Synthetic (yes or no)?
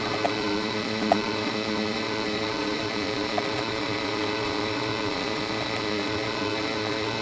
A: yes